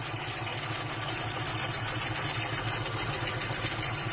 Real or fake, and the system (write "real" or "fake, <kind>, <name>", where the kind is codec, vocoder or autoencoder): real